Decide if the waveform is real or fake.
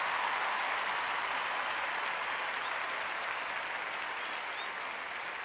real